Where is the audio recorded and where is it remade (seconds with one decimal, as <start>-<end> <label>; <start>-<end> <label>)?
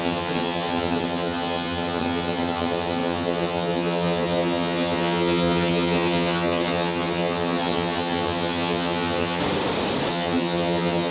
0.0-9.4 remade; 9.4-10.1 recorded; 10.1-11.1 remade